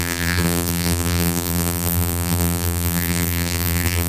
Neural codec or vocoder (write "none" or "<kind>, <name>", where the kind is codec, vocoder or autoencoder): vocoder, BigVGAN v2